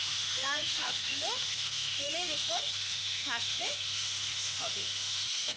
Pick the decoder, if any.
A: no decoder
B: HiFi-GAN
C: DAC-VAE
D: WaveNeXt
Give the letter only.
C